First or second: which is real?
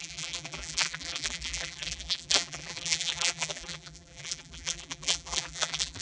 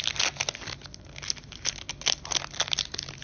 second